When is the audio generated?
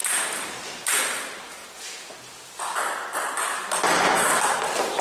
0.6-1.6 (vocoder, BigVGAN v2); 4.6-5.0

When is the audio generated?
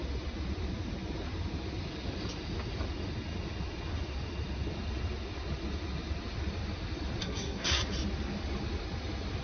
7.2-7.8 (codec, SNAC)